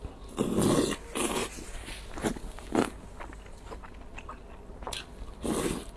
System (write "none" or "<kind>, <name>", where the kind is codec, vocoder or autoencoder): none